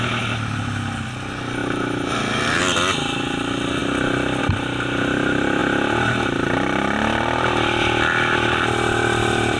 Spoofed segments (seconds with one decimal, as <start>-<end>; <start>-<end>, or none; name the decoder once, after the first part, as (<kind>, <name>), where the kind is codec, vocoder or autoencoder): 1.6-2.6 (vocoder, BigVGAN v2)